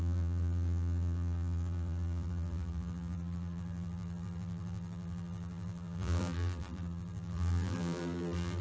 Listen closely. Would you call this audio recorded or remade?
remade